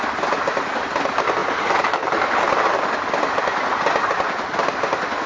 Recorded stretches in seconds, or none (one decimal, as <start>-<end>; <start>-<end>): 0.0-5.3